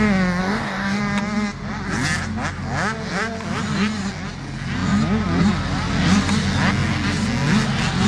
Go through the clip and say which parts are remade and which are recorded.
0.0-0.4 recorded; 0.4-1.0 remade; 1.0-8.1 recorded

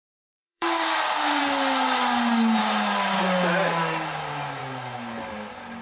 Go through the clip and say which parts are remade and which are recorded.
0.0-1.4 remade; 1.4-2.6 recorded; 2.6-3.2 remade; 3.2-5.8 recorded

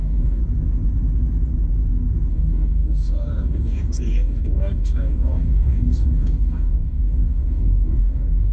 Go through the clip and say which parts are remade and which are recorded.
0.0-0.4 remade; 0.4-2.3 recorded; 2.3-8.5 remade

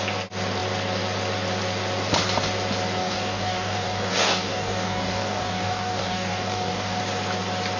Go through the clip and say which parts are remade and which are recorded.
0.0-3.0 recorded; 3.0-7.0 remade; 7.0-7.8 recorded